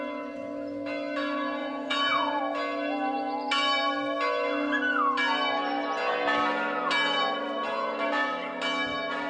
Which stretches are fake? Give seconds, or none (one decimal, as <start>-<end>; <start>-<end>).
1.6-2.4